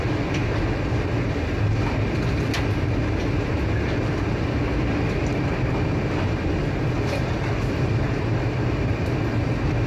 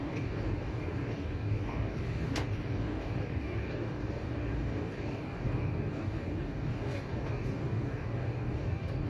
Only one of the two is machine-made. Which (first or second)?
second